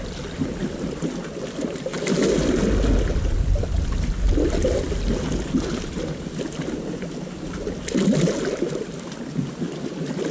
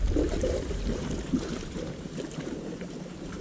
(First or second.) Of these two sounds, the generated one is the second